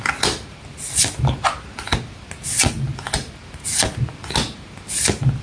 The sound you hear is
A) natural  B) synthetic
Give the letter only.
A